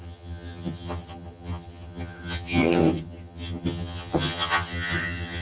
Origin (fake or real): fake